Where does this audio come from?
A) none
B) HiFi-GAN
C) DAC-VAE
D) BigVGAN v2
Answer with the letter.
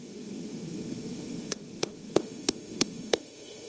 C